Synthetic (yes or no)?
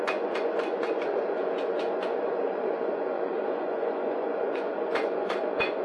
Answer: yes